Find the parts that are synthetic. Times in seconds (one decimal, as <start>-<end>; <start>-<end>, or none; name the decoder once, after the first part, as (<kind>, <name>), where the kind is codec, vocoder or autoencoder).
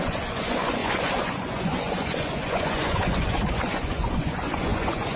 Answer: 0.0-5.2 (vocoder, Vocos)